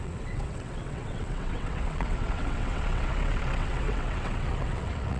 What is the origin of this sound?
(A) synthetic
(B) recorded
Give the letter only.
A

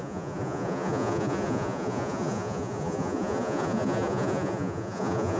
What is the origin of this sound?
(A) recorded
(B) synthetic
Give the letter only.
B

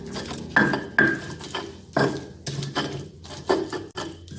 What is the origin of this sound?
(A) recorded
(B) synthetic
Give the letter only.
A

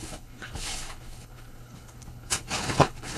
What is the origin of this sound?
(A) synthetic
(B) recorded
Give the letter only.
A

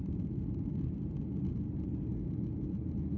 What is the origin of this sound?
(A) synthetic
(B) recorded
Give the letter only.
B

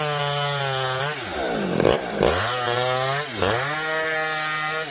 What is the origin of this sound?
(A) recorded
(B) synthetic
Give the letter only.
A